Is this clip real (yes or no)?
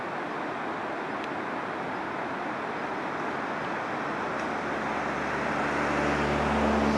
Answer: yes